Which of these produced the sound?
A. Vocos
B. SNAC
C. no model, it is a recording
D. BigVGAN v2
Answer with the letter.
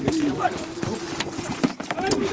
D